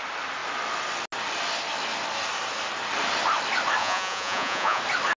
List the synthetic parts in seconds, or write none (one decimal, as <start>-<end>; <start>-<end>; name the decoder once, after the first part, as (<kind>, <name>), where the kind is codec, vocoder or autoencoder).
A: 3.8-4.8 (vocoder, Vocos)